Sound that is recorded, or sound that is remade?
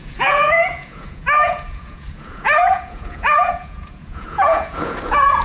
remade